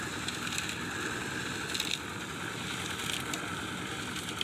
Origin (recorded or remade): recorded